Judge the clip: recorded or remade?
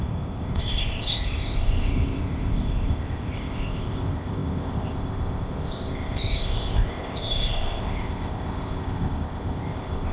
remade